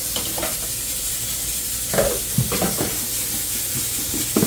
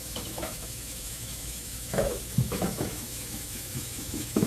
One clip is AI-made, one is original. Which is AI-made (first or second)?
second